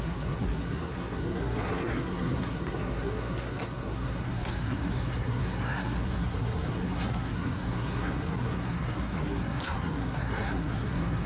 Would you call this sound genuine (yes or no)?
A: no